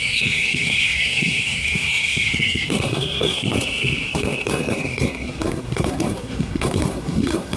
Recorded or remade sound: remade